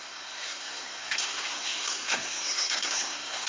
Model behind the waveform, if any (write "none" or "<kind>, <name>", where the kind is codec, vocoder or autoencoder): codec, SNAC